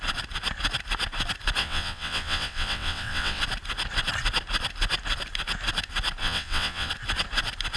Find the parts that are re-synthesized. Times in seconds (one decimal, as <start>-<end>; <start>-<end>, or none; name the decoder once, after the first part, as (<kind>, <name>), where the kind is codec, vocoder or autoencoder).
1.6-3.4 (vocoder, WaveNeXt); 6.2-6.9